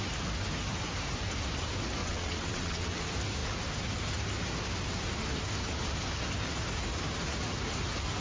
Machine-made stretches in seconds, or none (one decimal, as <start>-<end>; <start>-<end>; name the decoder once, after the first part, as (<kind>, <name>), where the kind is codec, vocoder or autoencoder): 2.0-3.0 (vocoder, WaveNeXt)